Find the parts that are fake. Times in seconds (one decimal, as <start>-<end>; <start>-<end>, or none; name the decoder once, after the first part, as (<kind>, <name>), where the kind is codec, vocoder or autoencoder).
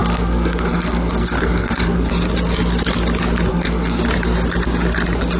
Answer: 0.0-2.1 (codec, SNAC); 3.5-4.0